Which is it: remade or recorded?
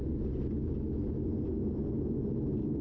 recorded